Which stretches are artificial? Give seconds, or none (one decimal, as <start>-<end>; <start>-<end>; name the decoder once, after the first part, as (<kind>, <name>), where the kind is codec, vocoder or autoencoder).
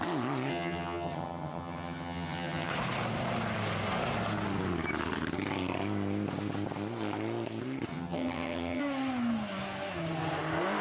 0.5-2.7 (vocoder, HiFi-GAN); 7.9-8.8